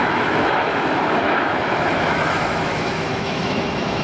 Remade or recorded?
remade